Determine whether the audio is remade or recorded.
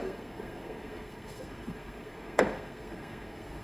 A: remade